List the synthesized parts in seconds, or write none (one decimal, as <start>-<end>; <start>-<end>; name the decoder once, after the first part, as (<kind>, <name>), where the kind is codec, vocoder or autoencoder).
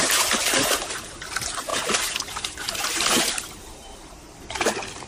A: 1.7-4.5 (vocoder, BigVGAN v2)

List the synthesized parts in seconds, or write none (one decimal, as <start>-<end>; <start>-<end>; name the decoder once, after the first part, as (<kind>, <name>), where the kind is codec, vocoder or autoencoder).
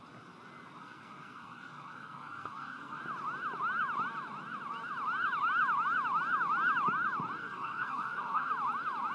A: 0.8-3.0 (codec, SNAC); 7.4-8.5